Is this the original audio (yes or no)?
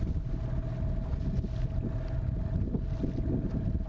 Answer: yes